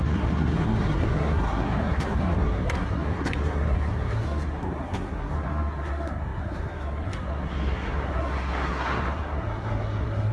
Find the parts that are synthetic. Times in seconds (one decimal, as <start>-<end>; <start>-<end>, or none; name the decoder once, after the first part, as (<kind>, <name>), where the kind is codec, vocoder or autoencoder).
0.0-10.3 (codec, SNAC)